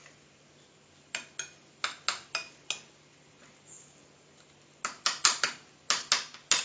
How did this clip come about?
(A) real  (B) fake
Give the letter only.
A